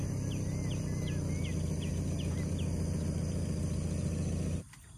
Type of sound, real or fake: real